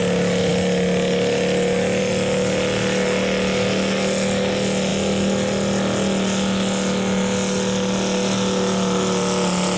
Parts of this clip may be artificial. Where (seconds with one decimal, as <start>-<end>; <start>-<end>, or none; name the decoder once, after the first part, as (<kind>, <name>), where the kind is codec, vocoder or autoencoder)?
none